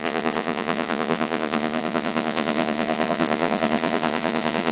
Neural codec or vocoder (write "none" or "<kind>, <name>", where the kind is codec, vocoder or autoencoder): vocoder, Vocos